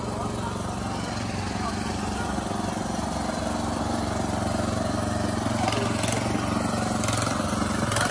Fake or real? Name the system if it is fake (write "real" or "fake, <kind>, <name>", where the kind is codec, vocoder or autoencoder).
real